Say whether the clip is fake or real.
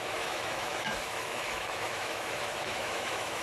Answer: fake